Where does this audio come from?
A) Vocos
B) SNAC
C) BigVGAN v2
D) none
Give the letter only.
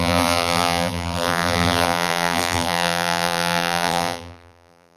C